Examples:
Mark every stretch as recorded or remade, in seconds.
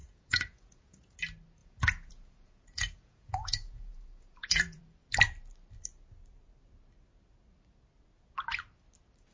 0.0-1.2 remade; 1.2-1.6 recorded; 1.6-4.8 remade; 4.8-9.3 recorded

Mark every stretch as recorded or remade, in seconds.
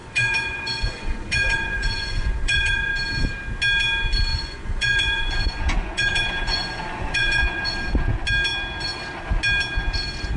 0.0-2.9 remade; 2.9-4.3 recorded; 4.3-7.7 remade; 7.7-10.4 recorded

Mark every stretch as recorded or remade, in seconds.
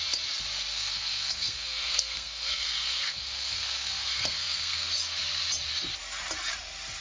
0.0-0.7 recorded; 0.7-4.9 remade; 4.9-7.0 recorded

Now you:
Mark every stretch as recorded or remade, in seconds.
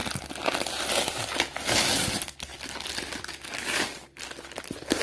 0.0-5.0 recorded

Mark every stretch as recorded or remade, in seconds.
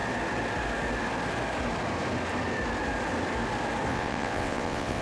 0.0-3.9 recorded; 3.9-5.0 remade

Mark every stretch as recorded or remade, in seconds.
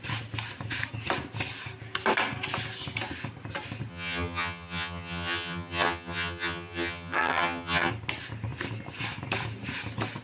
0.0-3.9 recorded; 3.9-7.9 remade; 7.9-10.2 recorded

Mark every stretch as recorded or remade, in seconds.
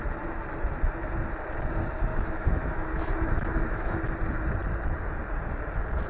0.0-2.1 recorded; 2.1-4.0 remade; 4.0-6.1 recorded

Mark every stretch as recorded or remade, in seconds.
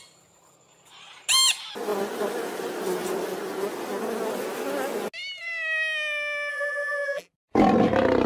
0.0-6.5 recorded; 6.5-7.3 remade; 7.3-8.3 recorded